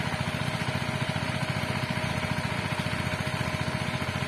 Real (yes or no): yes